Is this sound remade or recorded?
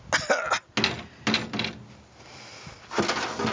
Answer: recorded